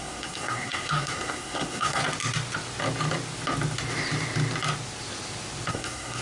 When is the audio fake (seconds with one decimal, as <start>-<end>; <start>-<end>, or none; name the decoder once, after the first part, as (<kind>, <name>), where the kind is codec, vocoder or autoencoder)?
0.0-2.0 (codec, SNAC); 5.7-6.2